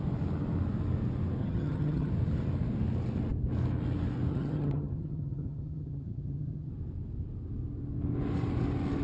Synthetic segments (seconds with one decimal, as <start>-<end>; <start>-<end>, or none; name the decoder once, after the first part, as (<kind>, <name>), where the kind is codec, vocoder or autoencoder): 1.4-2.1 (vocoder, HiFi-GAN); 4.3-6.7